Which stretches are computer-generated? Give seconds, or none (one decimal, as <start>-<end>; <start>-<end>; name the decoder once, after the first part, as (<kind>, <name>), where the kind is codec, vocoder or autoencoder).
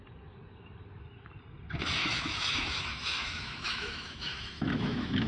2.0-5.3 (autoencoder, DAC-VAE)